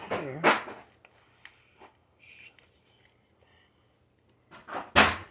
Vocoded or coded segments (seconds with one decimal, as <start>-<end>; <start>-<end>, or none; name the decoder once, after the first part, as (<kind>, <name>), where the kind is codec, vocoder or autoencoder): none